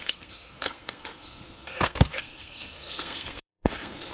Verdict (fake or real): fake